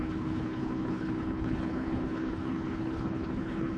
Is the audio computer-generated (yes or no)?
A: yes